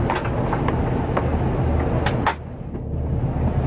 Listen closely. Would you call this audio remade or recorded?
recorded